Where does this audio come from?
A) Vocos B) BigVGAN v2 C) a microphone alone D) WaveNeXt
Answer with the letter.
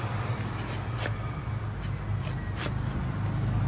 C